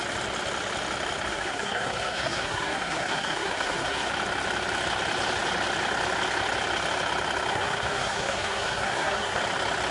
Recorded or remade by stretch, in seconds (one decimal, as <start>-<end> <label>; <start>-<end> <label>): 0.0-1.3 recorded; 1.3-4.1 remade; 4.1-7.5 recorded; 7.5-9.4 remade; 9.4-9.9 recorded